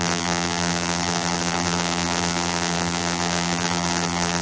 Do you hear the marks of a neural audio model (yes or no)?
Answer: yes